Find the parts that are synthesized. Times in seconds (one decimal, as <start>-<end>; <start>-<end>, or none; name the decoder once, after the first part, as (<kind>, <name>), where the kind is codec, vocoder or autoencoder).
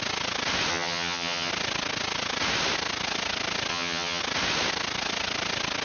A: 0.7-1.5 (vocoder, HiFi-GAN); 3.7-4.2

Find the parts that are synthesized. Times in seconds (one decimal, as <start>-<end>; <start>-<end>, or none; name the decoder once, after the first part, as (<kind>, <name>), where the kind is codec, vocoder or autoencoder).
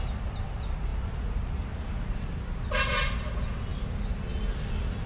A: none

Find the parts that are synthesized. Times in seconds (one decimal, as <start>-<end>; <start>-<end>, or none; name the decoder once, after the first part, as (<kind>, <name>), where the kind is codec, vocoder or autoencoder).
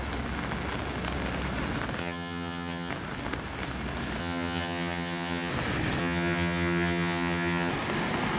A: 2.0-2.9 (vocoder, HiFi-GAN); 4.2-5.5; 6.0-7.7